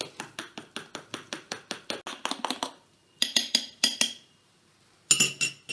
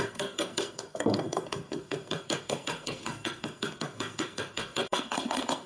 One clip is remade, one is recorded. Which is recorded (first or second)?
first